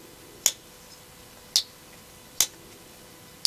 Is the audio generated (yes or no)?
no